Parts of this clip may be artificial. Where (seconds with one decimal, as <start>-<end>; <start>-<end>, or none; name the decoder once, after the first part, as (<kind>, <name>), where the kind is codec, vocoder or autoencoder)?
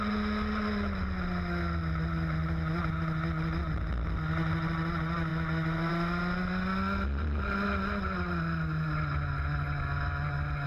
none